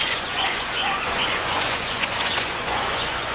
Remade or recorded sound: remade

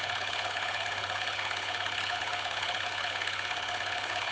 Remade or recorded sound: remade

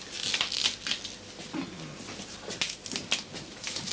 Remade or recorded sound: recorded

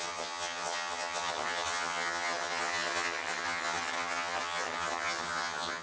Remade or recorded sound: remade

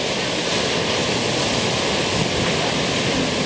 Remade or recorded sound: remade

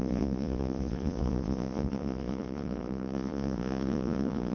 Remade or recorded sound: remade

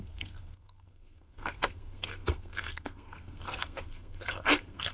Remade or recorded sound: remade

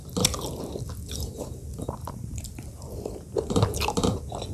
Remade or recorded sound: remade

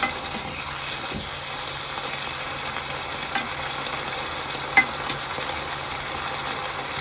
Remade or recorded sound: recorded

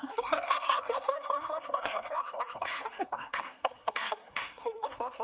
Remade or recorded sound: remade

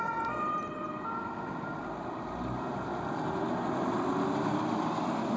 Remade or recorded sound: recorded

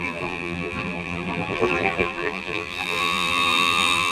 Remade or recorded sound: remade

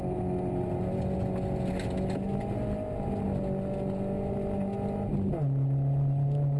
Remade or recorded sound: recorded